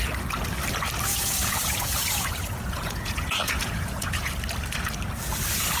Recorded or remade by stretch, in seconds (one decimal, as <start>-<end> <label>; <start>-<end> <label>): 0.0-1.1 recorded; 1.1-4.3 remade; 4.3-5.8 recorded